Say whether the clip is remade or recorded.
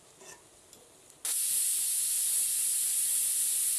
recorded